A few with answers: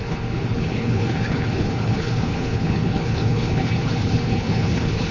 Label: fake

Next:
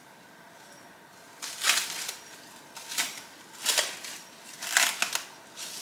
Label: real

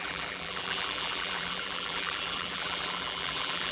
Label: fake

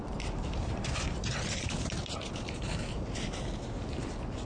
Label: real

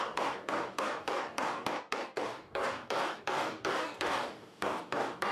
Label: fake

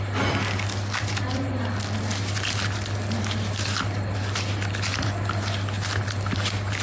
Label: real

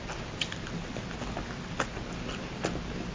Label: real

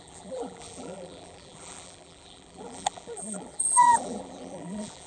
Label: fake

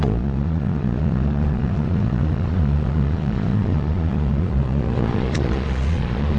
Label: fake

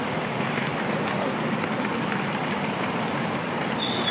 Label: real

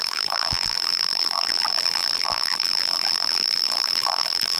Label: fake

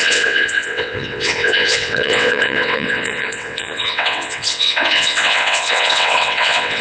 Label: fake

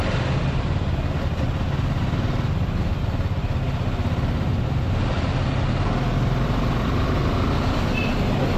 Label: real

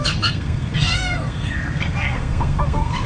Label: fake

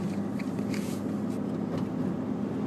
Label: real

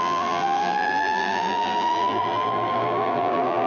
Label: fake